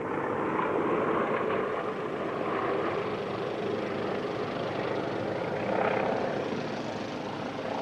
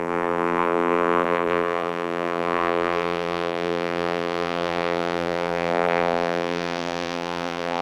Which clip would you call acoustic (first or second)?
first